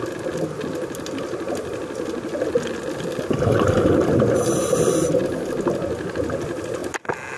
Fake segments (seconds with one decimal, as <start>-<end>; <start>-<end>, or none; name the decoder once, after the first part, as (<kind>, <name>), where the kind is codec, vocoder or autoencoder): none